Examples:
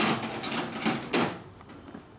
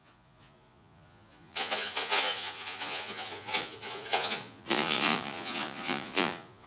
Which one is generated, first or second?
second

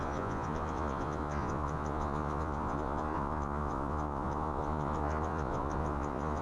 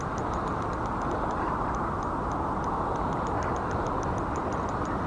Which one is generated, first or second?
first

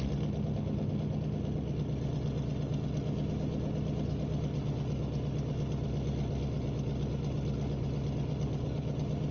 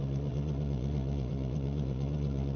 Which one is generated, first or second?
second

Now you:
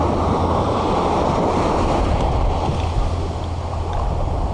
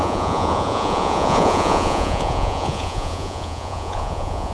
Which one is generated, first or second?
second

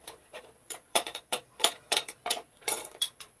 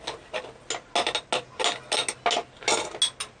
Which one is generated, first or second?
first